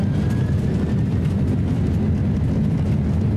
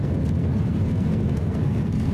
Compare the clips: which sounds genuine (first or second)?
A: first